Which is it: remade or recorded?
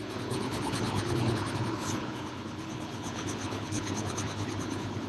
remade